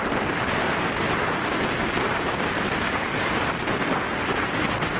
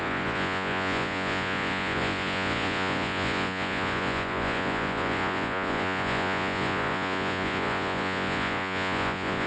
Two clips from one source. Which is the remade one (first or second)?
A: second